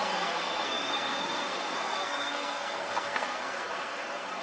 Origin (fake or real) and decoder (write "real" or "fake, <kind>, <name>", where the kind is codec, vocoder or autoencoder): fake, codec, SNAC